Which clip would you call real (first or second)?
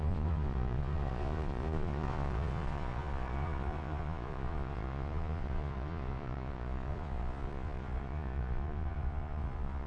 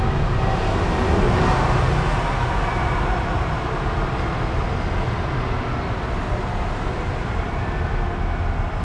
second